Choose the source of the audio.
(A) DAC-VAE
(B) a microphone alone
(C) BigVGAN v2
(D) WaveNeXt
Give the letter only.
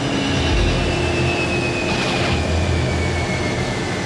B